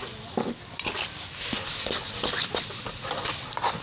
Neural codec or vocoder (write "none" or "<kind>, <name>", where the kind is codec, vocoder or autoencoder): none